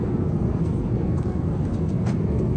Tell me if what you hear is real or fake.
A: fake